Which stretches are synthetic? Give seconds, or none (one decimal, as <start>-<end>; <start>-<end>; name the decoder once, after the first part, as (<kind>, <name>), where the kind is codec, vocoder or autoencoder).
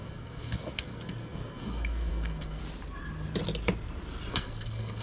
0.0-2.6 (codec, SNAC); 4.3-5.0